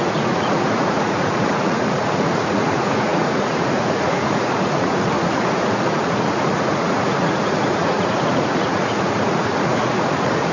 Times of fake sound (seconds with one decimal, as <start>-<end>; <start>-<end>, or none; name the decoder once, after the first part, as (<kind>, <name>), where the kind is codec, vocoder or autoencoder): 0.0-10.5 (vocoder, Vocos)